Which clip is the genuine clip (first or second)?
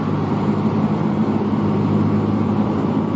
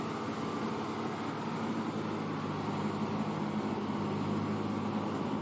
second